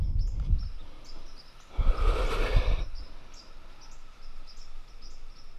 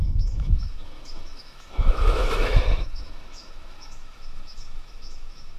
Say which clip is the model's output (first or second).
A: second